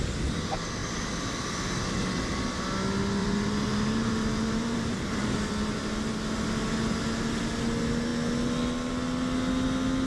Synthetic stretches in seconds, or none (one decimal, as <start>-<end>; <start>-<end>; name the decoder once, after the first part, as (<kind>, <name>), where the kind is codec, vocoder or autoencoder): 3.2-5.5 (vocoder, BigVGAN v2)

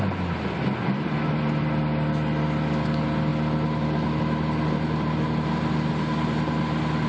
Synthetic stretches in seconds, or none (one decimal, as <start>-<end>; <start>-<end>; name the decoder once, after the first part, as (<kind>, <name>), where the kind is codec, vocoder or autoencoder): none

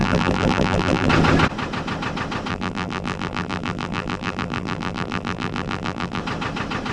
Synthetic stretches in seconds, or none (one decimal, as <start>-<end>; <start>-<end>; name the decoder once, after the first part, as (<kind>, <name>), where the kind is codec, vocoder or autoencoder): 0.0-1.1 (vocoder, BigVGAN v2); 2.5-6.2

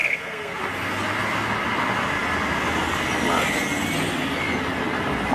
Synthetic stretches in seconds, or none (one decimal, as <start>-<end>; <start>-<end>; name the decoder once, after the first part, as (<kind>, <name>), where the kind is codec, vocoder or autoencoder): 0.0-0.6 (codec, SNAC)